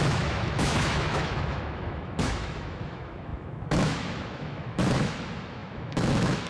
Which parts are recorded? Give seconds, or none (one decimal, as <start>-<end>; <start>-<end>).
none